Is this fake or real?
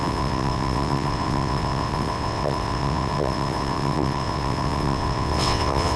fake